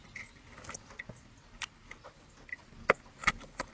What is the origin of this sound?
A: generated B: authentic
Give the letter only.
B